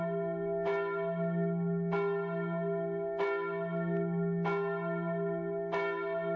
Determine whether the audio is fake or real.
real